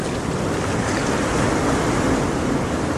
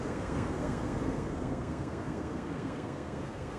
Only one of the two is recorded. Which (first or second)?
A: first